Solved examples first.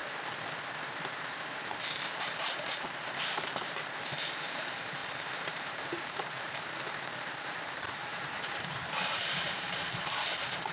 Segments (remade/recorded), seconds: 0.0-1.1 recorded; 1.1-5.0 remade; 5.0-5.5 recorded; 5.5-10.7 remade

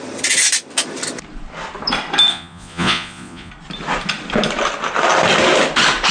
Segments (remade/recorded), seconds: 0.0-2.3 recorded; 2.3-3.5 remade; 3.5-6.1 recorded

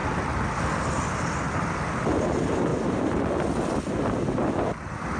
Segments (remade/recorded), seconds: 0.0-5.2 recorded

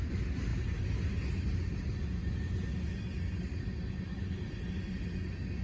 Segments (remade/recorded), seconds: 0.0-5.6 recorded

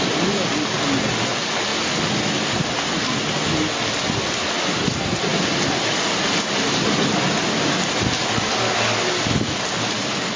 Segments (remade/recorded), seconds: 0.0-10.4 recorded

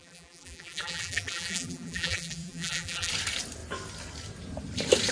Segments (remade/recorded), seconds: 0.0-3.1 remade; 3.1-5.1 recorded

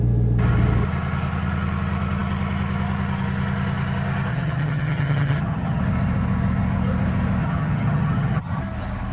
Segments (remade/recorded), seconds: 0.0-4.3 recorded; 4.3-5.8 remade; 5.8-7.4 recorded; 7.4-8.6 remade; 8.6-9.1 recorded

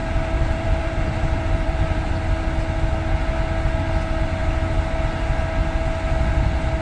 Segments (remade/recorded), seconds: 0.0-2.1 remade; 2.1-6.8 recorded